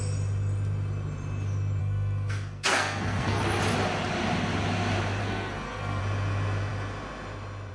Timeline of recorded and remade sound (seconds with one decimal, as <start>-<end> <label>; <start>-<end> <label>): 0.0-1.8 recorded; 1.8-3.4 remade; 3.4-5.2 recorded; 5.2-6.0 remade; 6.0-7.7 recorded